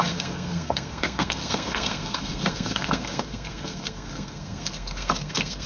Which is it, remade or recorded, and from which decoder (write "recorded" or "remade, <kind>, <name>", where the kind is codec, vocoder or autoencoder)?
remade, codec, SNAC